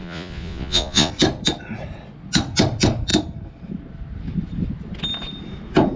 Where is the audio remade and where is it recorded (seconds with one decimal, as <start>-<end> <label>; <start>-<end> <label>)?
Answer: 0.0-1.1 remade; 1.1-6.0 recorded